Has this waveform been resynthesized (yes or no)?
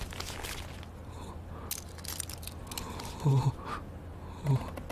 no